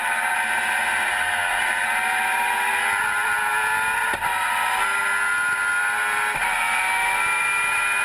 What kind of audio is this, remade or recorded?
recorded